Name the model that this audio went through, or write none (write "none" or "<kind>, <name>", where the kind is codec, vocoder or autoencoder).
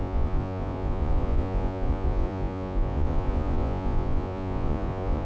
vocoder, Vocos